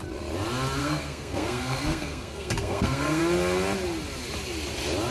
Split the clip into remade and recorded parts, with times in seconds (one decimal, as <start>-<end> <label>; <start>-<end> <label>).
0.0-0.8 recorded; 0.8-3.2 remade; 3.2-5.1 recorded